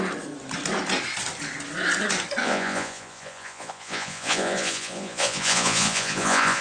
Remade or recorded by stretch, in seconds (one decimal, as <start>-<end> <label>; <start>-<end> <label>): 0.0-2.4 recorded; 2.4-6.6 remade